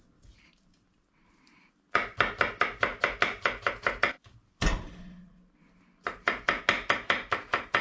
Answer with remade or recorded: recorded